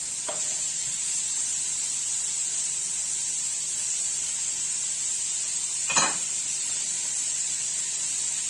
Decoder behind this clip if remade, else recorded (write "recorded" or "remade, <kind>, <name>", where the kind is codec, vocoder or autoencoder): recorded